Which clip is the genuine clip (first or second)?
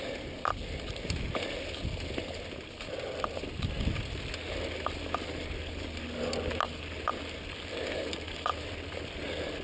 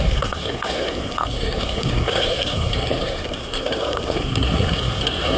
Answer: first